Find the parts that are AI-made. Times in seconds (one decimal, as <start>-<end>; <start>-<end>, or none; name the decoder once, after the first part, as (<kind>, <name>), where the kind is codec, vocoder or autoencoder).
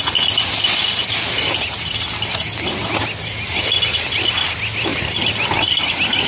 none